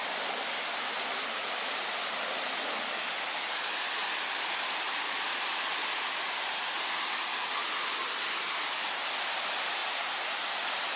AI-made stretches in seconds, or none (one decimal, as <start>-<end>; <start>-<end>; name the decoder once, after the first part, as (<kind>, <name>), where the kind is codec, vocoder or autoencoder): 9.8-10.5 (vocoder, BigVGAN v2)